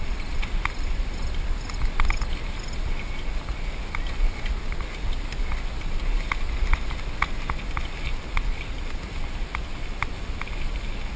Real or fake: real